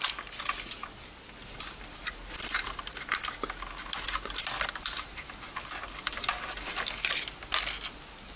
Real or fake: real